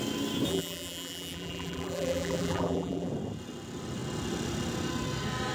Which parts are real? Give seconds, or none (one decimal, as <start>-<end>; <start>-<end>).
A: 0.0-0.5; 3.1-5.5